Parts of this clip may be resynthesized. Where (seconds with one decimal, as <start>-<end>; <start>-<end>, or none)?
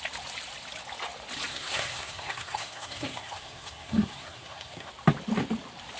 1.5-4.9